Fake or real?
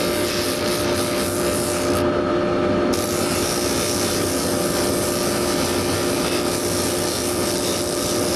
real